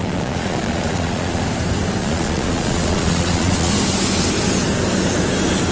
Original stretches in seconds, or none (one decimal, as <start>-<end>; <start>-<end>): 1.4-2.0; 3.7-5.7